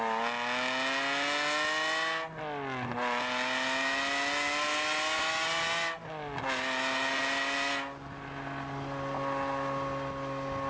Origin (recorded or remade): recorded